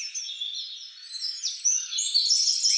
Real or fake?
real